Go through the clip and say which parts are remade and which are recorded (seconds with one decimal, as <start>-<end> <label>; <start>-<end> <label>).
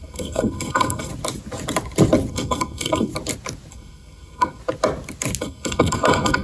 0.0-1.1 remade; 1.1-2.3 recorded; 2.3-3.1 remade; 3.1-3.7 recorded; 3.7-4.6 remade; 4.6-5.4 recorded; 5.4-6.4 remade